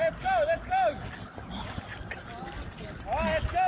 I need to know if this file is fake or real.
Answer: real